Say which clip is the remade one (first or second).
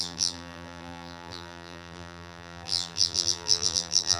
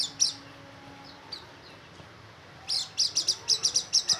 first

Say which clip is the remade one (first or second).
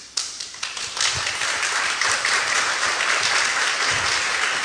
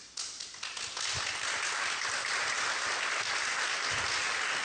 first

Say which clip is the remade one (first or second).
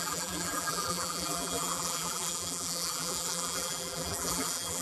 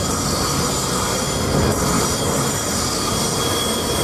first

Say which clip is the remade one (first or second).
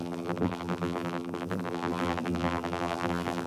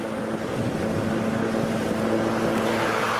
first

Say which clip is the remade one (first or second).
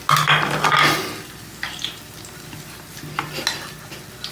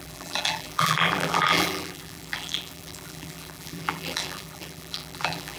second